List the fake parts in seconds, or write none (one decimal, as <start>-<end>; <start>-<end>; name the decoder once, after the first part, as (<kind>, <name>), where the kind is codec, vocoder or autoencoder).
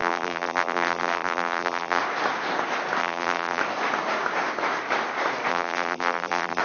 0.0-2.0 (vocoder, BigVGAN v2); 3.0-3.6; 5.5-6.6